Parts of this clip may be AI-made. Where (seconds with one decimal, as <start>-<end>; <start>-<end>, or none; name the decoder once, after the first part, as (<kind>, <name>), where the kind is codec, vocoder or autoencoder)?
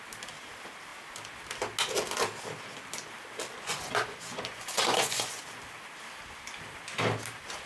3.5-5.4 (vocoder, Vocos)